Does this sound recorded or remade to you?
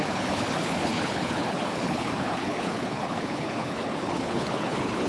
remade